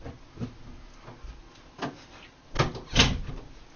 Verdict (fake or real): real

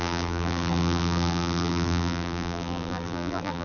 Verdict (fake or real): fake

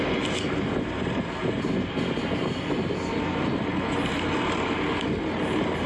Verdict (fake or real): real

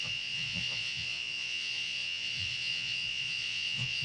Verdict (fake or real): fake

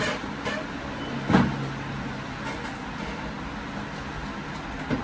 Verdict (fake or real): real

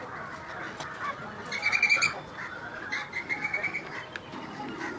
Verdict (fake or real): real